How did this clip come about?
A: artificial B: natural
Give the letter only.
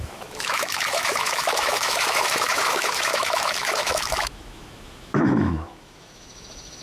A